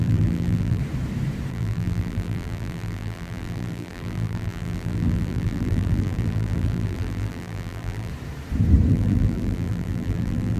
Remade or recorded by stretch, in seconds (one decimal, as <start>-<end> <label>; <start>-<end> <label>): 0.0-0.8 remade; 0.8-1.5 recorded; 1.5-8.1 remade; 8.1-8.9 recorded; 8.9-10.6 remade